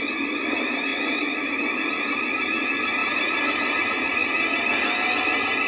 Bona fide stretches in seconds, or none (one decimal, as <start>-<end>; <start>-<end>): 0.0-0.9; 1.5-5.7

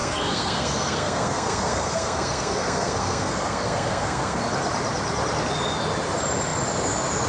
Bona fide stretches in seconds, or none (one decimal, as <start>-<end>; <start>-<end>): 4.4-7.3